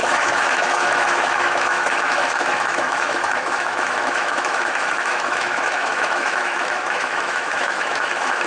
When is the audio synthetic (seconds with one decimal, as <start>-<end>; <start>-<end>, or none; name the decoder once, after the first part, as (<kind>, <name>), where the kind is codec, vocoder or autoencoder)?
0.0-8.5 (autoencoder, DAC-VAE)